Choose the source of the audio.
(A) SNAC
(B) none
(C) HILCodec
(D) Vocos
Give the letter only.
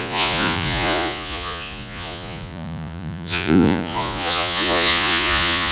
D